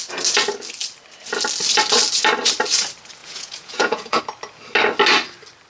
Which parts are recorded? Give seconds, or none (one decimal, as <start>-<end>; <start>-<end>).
0.0-3.2; 4.2-5.7